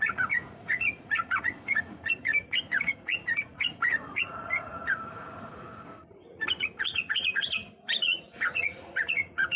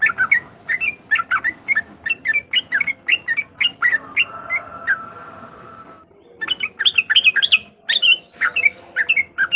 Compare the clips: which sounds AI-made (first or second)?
first